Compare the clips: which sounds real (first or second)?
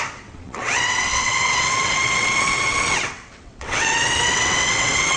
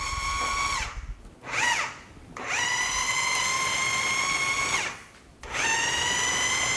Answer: second